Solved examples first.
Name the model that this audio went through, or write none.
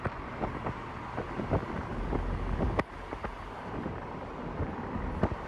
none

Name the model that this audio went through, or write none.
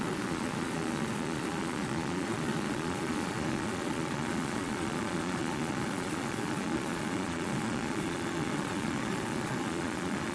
vocoder, Vocos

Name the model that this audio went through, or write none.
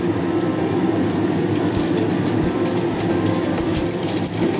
none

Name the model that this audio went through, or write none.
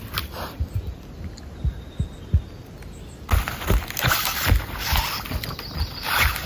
none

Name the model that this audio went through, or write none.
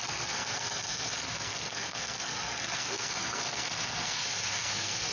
codec, SNAC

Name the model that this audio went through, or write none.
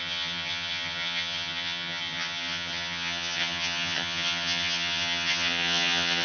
vocoder, HiFi-GAN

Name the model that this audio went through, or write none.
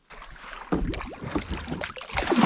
none